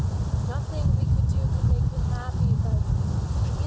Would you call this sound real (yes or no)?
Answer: no